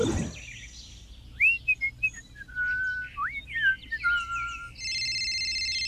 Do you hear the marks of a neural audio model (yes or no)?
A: no